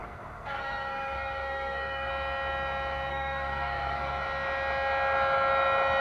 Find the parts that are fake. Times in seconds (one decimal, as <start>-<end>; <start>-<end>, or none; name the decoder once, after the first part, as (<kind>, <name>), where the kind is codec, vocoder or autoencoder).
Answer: 0.0-2.1 (codec, SNAC); 3.1-4.1